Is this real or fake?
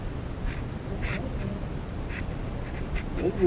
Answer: real